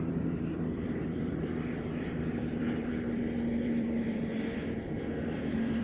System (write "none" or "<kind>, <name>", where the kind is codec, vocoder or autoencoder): vocoder, BigVGAN v2